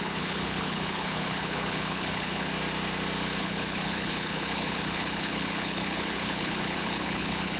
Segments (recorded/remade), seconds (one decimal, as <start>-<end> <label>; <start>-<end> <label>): 0.0-2.5 remade; 2.5-3.4 recorded; 3.4-7.6 remade